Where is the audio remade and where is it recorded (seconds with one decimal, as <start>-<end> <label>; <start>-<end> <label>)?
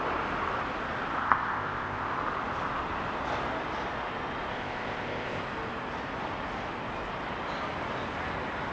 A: 0.0-1.2 recorded; 1.2-2.1 remade; 2.1-4.5 recorded; 4.5-5.4 remade; 5.4-8.7 recorded